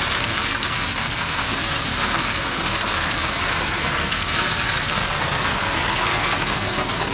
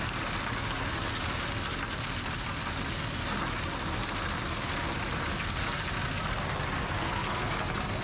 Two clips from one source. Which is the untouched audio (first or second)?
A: second